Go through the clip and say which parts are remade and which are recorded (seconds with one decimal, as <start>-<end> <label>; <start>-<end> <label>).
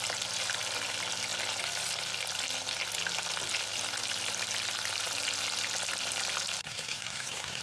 0.0-6.6 recorded; 6.6-7.6 remade